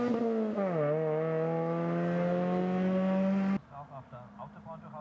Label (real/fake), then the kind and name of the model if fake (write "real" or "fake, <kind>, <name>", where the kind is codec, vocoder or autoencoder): real